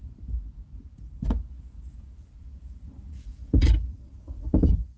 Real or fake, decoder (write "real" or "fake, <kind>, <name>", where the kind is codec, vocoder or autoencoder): fake, vocoder, Vocos